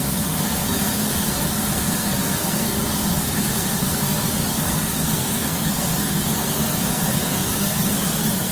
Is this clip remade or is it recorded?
remade